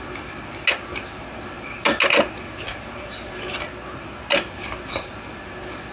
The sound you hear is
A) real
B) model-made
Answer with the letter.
A